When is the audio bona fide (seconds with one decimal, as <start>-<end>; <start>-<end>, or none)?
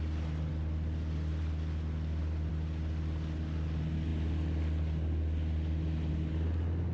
0.0-6.9